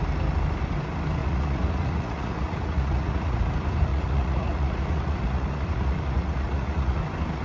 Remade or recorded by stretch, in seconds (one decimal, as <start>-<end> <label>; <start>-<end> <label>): 0.0-1.2 recorded; 1.2-3.4 remade; 3.4-3.9 recorded; 3.9-7.0 remade; 7.0-7.4 recorded